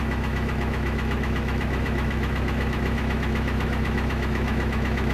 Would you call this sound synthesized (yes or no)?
yes